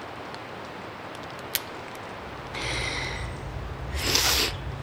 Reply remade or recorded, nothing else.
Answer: recorded